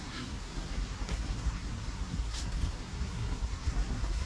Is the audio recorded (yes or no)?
no